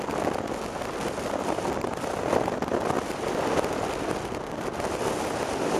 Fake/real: real